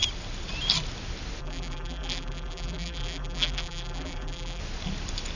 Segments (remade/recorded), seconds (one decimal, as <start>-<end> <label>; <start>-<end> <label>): 0.0-1.4 recorded; 1.4-4.6 remade; 4.6-5.4 recorded